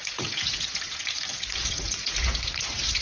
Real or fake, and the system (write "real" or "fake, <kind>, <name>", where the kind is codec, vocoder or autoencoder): fake, vocoder, Vocos